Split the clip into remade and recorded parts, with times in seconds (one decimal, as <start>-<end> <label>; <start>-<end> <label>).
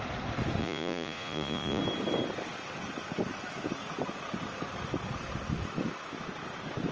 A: 0.0-0.6 recorded; 0.6-1.8 remade; 1.8-6.9 recorded